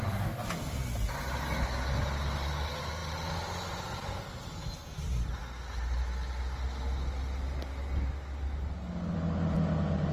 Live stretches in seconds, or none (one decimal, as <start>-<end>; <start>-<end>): 0.0-4.8; 5.4-10.1